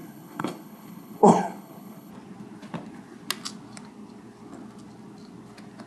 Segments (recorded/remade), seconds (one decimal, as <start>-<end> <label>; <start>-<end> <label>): 0.0-2.1 remade; 2.1-5.9 recorded